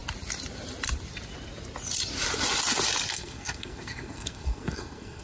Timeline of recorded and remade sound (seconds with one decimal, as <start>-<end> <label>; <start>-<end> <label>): 0.0-3.1 recorded; 3.1-5.2 remade